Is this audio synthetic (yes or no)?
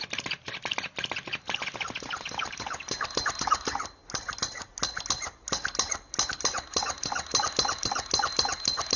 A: no